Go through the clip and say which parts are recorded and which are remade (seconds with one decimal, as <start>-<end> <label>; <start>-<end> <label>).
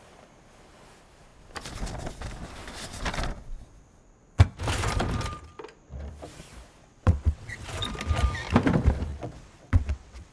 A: 0.0-6.8 recorded; 6.8-7.7 remade; 7.7-9.1 recorded; 9.1-10.3 remade